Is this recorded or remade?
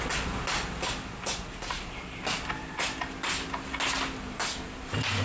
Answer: recorded